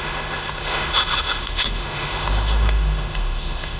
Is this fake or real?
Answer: fake